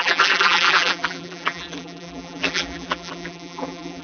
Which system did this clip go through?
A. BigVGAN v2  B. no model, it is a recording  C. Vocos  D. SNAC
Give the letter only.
A